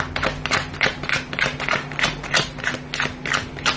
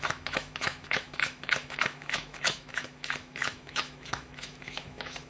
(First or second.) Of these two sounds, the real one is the first